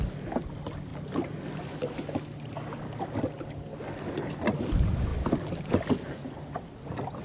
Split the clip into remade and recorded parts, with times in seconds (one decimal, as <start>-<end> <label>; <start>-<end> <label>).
0.0-7.2 recorded